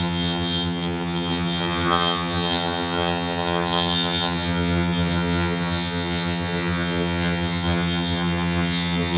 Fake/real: fake